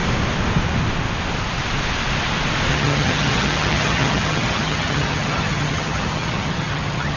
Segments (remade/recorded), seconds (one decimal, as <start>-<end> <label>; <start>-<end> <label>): 0.0-2.7 recorded; 2.7-7.2 remade